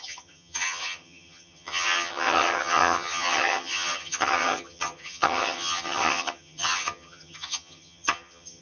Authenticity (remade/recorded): remade